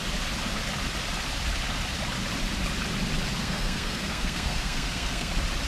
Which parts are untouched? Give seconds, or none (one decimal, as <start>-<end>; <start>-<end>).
0.0-3.4; 5.3-5.7